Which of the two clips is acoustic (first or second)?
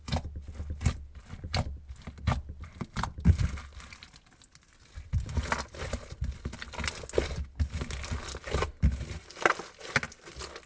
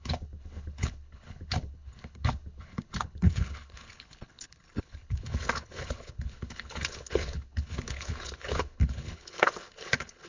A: first